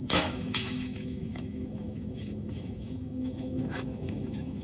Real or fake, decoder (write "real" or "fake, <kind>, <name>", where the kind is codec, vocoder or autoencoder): fake, autoencoder, DAC-VAE